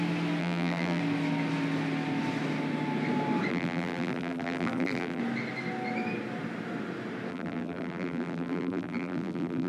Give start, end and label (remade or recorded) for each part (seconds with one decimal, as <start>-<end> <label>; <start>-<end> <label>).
0.0-0.4 recorded; 0.4-1.0 remade; 1.0-3.5 recorded; 3.5-5.2 remade; 5.2-7.3 recorded; 7.3-9.7 remade